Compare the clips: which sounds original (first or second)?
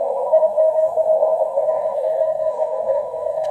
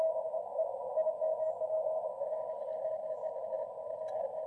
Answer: second